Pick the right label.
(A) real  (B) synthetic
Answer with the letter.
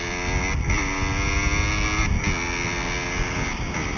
A